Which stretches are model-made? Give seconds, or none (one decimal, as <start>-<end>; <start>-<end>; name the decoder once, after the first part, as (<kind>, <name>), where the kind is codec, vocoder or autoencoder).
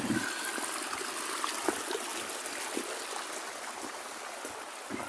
none